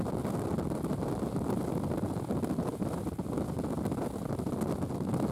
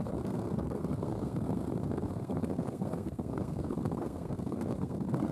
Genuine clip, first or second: first